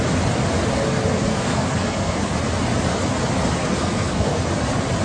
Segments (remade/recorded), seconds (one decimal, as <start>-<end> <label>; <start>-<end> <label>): 0.0-1.3 recorded; 1.3-2.2 remade; 2.2-3.6 recorded; 3.6-4.4 remade; 4.4-5.0 recorded